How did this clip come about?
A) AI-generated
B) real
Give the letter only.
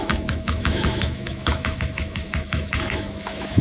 A